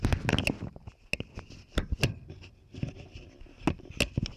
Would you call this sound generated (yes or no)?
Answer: no